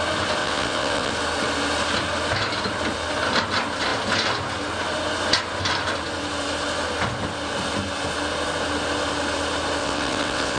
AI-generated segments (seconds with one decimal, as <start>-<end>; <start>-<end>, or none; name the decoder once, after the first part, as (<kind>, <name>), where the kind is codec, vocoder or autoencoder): 0.4-1.1 (vocoder, WaveNeXt); 9.8-10.6